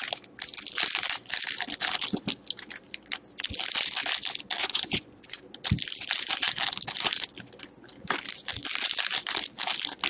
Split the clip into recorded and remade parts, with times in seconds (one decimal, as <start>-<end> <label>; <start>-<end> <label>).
0.0-4.6 recorded; 4.6-5.4 remade; 5.4-10.1 recorded